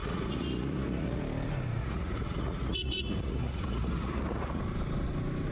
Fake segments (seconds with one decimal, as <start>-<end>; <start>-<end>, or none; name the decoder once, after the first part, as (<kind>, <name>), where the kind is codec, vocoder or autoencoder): 0.0-1.2 (vocoder, Vocos); 1.8-4.6